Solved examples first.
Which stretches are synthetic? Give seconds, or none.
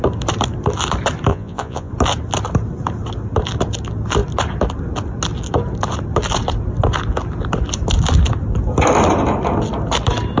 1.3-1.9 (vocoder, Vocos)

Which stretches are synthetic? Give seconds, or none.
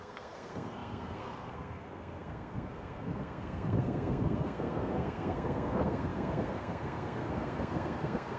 0.0-8.4 (codec, SNAC)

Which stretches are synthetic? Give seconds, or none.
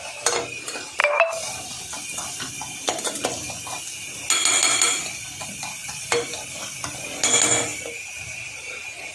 1.0-3.5 (vocoder, BigVGAN v2); 5.8-6.5; 7.7-8.5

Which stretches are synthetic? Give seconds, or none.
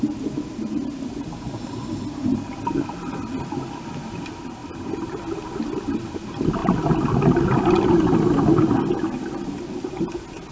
none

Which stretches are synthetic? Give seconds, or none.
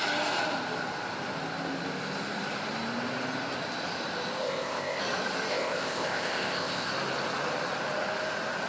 4.4-5.0 (codec, ZipCodec); 5.5-6.9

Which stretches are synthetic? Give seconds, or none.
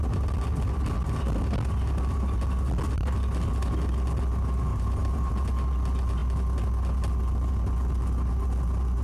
4.7-5.3 (vocoder, BigVGAN v2)